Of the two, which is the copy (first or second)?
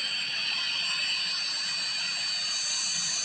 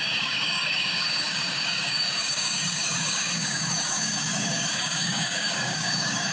second